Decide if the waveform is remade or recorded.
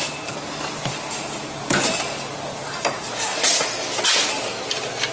recorded